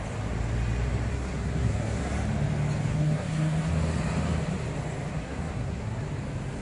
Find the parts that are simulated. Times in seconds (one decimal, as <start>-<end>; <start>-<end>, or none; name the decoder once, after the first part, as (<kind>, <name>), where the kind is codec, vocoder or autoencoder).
1.1-2.1 (codec, SNAC); 2.9-3.7; 5.1-6.0